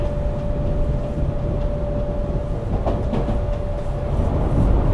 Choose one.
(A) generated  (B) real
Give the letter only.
B